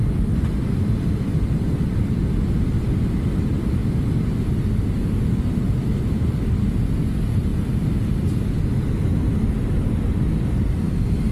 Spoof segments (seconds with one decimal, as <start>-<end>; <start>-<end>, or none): none